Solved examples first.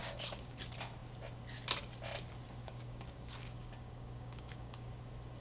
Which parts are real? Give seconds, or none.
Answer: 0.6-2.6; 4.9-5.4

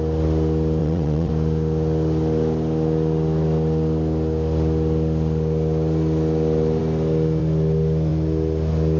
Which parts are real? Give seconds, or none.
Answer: 0.0-0.8; 1.3-9.0

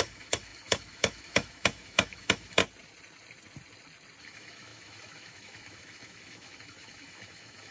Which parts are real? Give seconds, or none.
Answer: 2.6-4.2

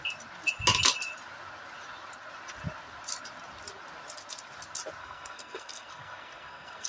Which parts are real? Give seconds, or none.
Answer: 0.0-5.0

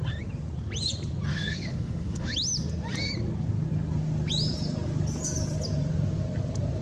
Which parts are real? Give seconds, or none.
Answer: 0.0-1.3; 2.3-6.8

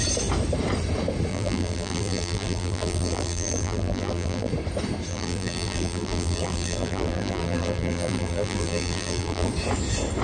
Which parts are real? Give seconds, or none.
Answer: 0.0-1.3; 4.5-5.1; 9.5-10.2

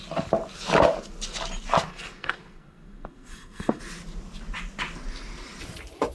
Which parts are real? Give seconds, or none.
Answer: 0.0-1.9; 3.8-6.1